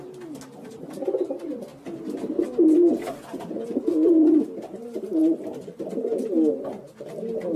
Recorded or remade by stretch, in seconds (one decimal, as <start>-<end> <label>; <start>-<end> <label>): 0.0-7.6 recorded